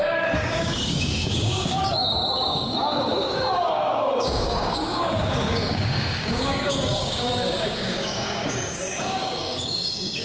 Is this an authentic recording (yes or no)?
no